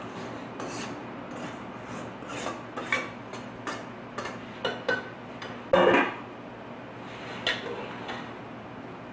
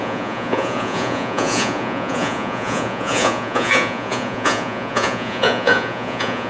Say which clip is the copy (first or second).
second